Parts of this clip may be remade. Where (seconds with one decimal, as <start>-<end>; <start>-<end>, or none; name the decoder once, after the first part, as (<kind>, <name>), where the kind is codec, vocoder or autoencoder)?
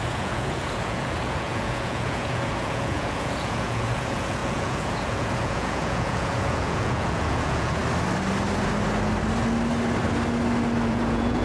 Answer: 0.0-7.8 (vocoder, Vocos); 10.9-11.4